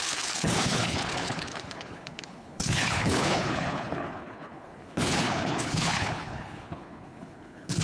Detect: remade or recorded remade